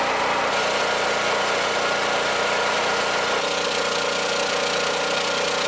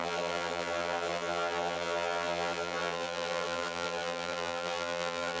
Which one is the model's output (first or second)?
second